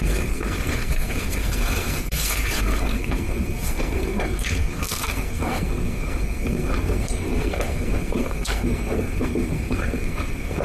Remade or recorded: remade